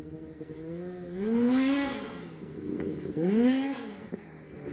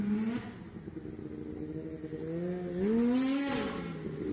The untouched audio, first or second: second